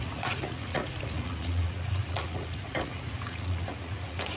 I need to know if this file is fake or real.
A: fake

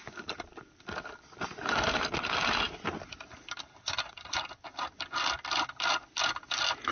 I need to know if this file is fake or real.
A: real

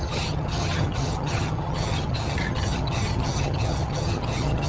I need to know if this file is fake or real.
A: fake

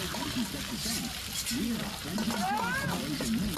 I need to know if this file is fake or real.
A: real